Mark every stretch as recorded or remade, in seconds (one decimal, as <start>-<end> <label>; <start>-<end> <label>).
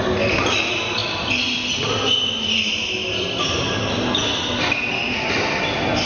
0.0-6.1 recorded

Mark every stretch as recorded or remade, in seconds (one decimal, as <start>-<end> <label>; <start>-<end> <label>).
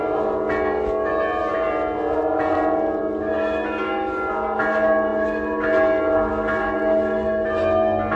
0.0-8.2 recorded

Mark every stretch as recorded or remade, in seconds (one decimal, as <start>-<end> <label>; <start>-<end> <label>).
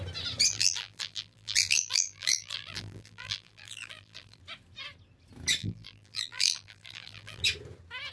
0.0-0.5 recorded; 0.5-4.4 remade; 4.4-5.6 recorded; 5.6-7.4 remade; 7.4-8.1 recorded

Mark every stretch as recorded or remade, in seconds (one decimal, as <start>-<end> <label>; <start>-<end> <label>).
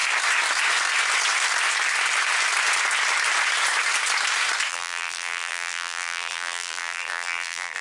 0.0-4.7 recorded; 4.7-7.8 remade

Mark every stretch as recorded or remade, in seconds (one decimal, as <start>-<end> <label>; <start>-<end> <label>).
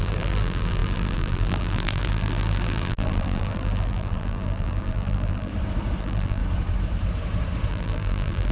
0.0-5.5 remade; 5.5-6.0 recorded; 6.0-6.4 remade; 6.4-7.7 recorded; 7.7-8.5 remade